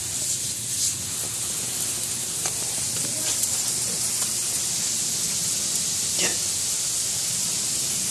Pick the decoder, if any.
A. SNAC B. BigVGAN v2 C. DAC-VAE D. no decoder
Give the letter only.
D